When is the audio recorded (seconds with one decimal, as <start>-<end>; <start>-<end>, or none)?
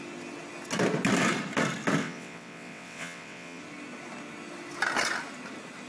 0.0-2.0; 3.6-5.9